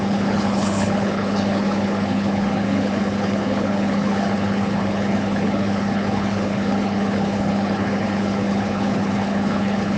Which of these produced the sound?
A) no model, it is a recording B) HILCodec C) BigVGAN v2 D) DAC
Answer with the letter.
B